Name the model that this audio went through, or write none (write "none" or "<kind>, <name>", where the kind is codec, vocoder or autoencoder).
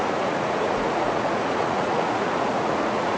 vocoder, Vocos